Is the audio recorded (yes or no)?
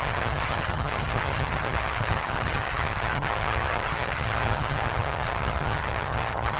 no